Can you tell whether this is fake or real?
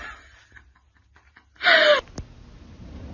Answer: real